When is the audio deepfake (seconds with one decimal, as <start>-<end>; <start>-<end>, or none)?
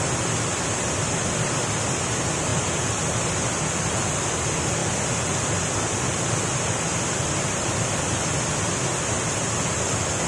none